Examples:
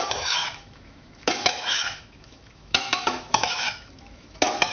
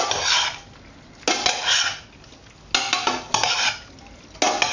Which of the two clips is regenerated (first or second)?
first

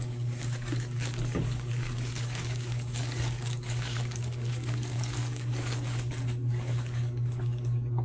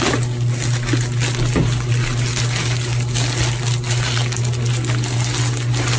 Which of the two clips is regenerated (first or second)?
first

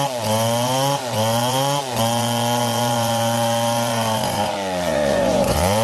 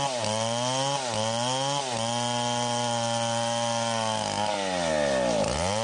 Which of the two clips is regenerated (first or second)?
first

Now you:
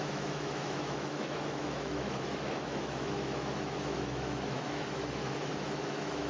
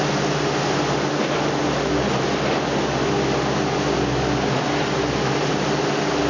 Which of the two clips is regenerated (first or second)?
first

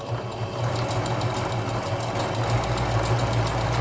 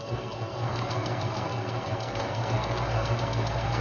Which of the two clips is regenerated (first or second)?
second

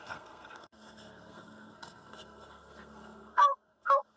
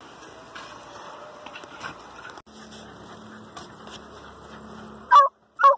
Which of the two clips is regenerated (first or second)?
first